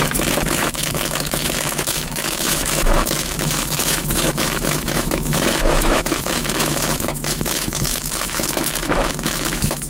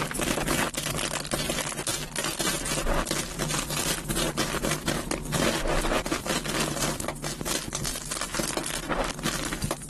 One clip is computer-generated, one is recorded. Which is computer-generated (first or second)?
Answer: first